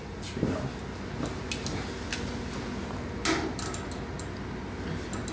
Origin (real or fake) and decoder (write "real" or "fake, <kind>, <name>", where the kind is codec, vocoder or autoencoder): real